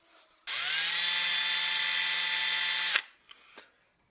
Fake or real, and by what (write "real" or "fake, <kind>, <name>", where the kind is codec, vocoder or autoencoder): real